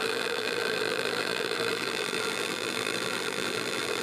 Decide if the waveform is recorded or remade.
remade